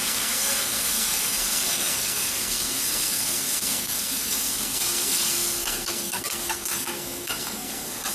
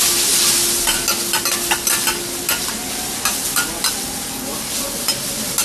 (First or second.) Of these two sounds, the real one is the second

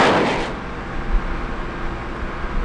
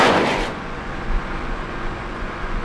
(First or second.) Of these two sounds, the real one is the first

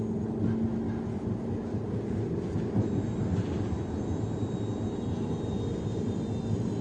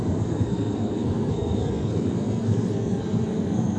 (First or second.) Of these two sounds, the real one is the first